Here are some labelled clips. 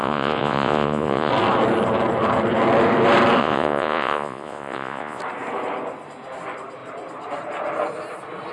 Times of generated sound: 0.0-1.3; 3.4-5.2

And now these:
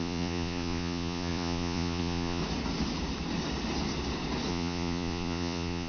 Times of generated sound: 0.0-2.4; 4.5-5.9